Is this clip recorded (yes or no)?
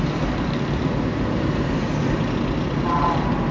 yes